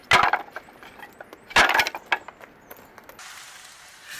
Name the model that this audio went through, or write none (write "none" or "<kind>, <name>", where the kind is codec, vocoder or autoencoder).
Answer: none